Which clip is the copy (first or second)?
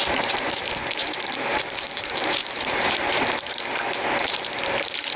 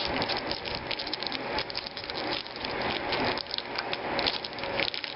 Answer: first